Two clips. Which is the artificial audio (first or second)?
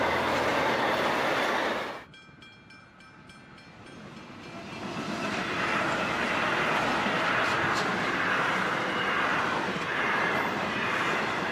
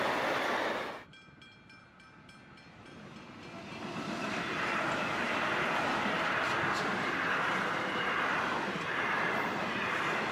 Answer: second